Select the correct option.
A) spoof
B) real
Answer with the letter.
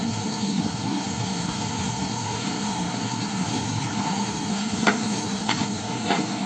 A